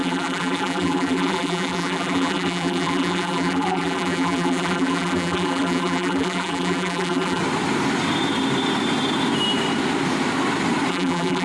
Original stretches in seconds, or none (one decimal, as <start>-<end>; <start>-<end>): 7.4-10.9